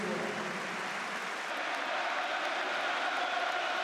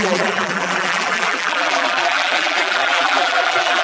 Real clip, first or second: first